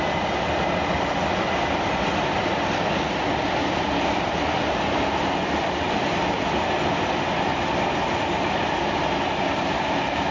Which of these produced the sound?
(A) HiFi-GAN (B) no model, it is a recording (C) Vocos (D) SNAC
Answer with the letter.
B